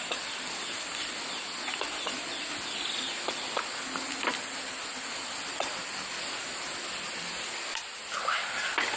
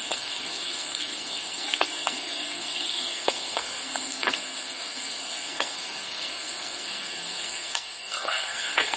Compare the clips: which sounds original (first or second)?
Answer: first